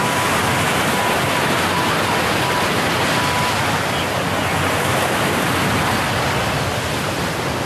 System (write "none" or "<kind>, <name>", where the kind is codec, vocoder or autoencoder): none